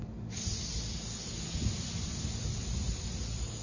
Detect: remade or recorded remade